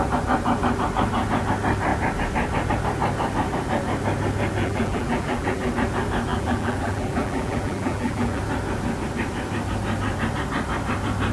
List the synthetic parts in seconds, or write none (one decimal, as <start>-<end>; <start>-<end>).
4.6-5.7; 6.3-8.4